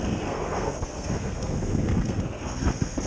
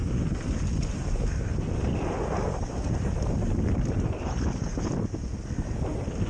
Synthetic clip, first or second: first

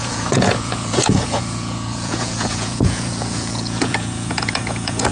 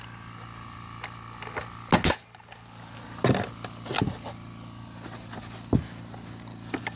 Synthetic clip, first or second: first